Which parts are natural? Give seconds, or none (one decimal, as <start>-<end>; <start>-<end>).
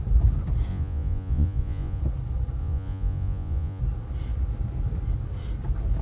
0.0-0.7; 2.0-2.6; 3.8-6.0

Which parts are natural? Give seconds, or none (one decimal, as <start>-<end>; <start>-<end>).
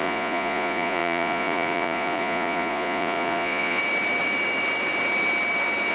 3.8-5.9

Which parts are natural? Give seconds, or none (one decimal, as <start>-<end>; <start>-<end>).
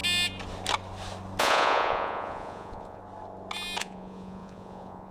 0.0-1.4; 3.0-3.8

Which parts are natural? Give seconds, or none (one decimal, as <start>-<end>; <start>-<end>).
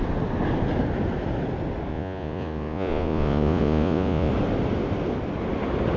0.0-1.9; 4.3-6.0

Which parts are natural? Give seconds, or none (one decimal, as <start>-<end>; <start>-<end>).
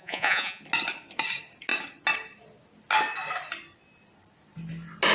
0.6-5.1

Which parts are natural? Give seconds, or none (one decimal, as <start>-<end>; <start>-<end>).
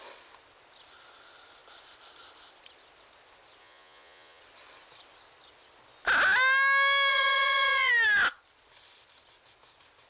0.0-3.6; 4.4-7.1; 7.9-10.1